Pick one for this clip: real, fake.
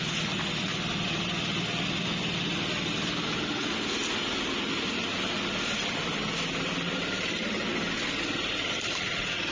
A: real